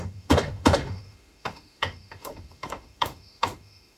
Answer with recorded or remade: remade